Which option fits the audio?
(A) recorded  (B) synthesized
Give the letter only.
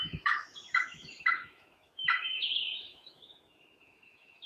B